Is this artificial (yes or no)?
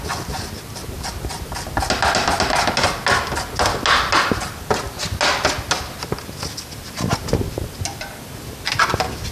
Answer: no